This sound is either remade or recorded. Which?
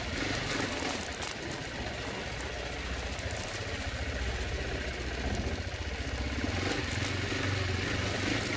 recorded